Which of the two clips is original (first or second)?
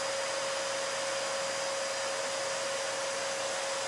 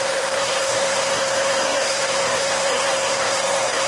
first